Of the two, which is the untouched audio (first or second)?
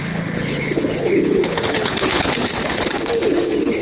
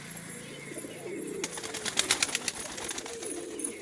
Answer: second